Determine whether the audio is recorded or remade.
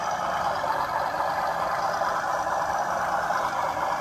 recorded